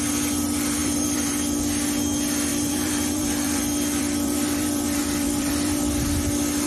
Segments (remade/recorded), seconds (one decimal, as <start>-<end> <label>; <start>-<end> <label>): 0.0-0.8 recorded; 0.8-1.3 remade; 1.3-2.5 recorded; 2.5-6.1 remade; 6.1-6.7 recorded